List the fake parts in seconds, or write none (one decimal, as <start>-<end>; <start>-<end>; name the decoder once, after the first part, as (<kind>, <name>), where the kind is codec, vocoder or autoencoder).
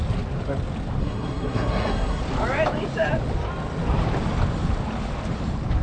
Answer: 1.0-2.2 (codec, SNAC)